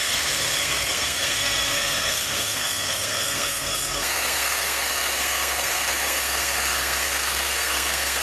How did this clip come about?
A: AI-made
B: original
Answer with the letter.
A